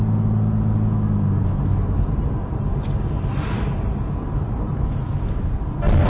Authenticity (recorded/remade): recorded